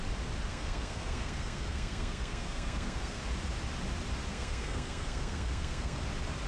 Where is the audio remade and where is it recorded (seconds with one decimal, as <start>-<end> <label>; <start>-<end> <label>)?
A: 0.0-0.5 recorded; 0.5-3.2 remade; 3.2-4.3 recorded; 4.3-6.0 remade; 6.0-6.5 recorded